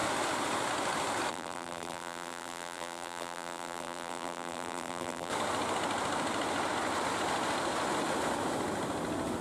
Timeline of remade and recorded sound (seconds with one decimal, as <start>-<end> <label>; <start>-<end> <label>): 0.0-1.3 recorded; 1.3-5.3 remade; 5.3-9.4 recorded